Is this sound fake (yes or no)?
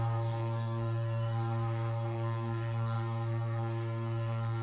yes